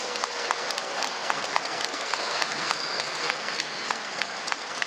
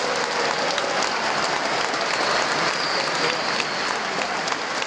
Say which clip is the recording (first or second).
second